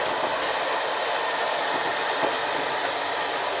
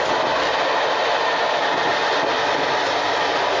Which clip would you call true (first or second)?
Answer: second